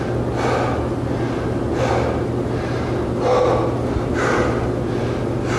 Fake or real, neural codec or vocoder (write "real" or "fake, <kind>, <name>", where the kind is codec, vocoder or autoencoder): real